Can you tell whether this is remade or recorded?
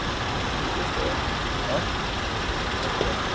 recorded